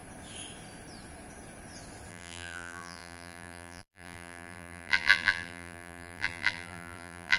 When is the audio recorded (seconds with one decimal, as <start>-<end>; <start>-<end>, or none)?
0.0-2.1